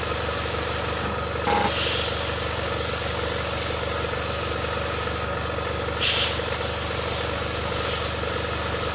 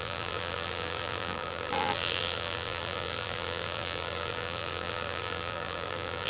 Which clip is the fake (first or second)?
second